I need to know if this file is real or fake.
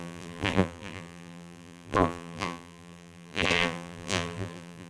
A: fake